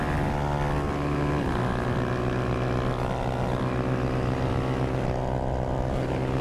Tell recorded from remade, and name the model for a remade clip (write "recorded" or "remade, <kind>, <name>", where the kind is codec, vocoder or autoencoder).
recorded